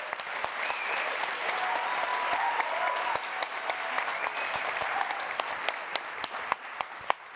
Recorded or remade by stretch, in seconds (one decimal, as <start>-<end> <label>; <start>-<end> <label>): 0.0-7.4 recorded